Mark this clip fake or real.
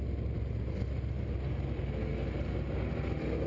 real